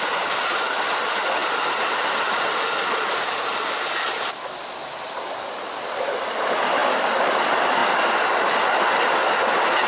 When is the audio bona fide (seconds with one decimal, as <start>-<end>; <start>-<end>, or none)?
1.4-2.8; 7.8-9.9